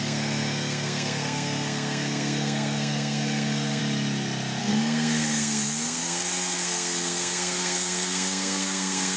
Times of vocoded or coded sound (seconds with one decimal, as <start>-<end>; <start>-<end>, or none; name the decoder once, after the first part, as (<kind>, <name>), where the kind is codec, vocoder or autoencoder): 0.0-3.8 (codec, SNAC); 4.6-9.2